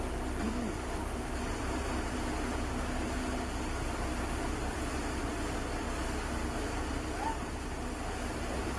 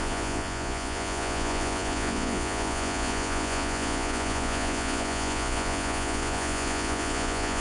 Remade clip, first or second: second